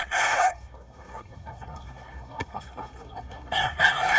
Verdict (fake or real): fake